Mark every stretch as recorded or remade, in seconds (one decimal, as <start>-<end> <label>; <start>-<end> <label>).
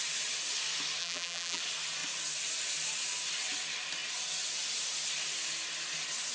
0.0-1.0 recorded; 1.0-1.6 remade; 1.6-6.3 recorded